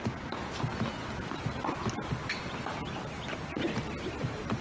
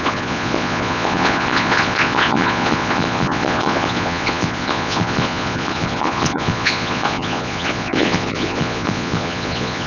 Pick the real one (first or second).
first